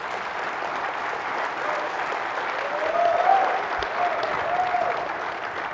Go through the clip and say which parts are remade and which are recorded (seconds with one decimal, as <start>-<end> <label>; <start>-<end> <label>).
0.0-5.7 recorded